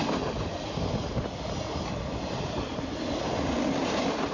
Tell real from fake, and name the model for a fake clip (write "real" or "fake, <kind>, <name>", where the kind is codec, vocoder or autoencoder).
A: real